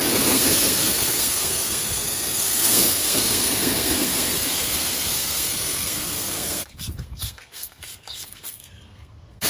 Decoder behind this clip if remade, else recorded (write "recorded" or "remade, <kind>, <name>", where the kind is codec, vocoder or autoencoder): remade, codec, SNAC